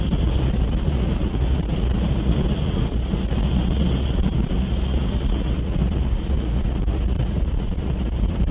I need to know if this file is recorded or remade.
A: remade